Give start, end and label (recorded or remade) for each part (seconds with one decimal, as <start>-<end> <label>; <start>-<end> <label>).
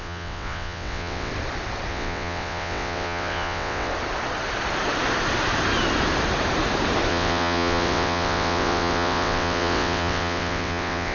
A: 0.0-1.3 remade; 1.3-1.9 recorded; 1.9-3.9 remade; 3.9-7.1 recorded; 7.1-11.1 remade